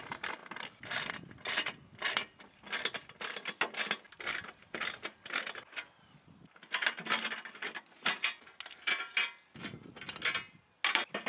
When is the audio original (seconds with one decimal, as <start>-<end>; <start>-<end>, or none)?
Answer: 0.0-11.3